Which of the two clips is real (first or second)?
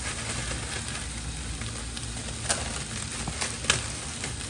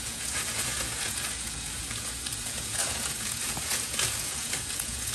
first